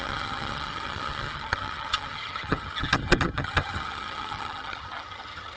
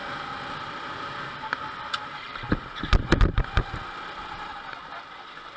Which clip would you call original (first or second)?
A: second